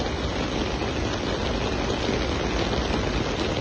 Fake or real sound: real